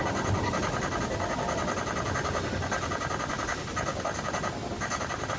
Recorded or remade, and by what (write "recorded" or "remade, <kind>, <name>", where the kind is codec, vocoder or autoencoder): recorded